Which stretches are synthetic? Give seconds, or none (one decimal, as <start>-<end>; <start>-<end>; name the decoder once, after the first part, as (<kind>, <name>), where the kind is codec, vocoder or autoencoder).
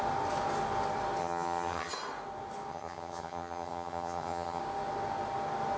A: 1.2-1.9 (vocoder, HiFi-GAN); 2.7-4.6